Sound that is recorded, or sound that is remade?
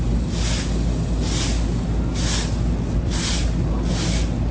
recorded